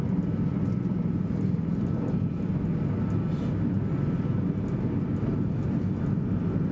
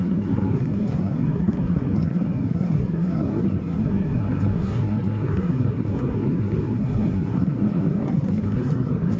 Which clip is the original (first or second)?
first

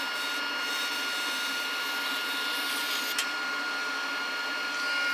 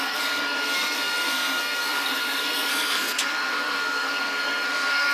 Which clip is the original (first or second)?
first